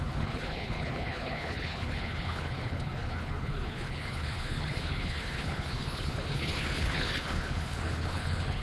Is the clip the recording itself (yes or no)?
no